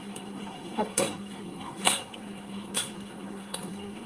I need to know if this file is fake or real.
fake